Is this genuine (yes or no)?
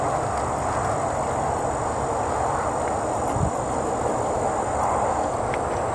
yes